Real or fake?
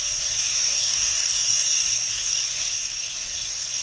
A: fake